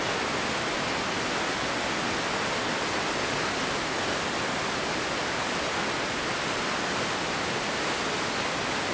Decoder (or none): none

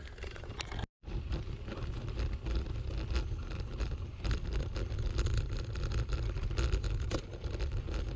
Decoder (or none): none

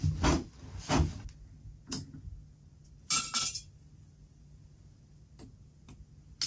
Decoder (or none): none